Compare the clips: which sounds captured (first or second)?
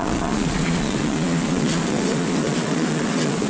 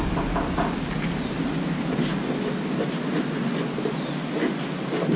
second